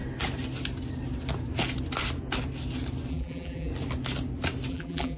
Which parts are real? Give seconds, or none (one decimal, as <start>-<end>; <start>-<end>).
0.0-3.1; 3.7-4.7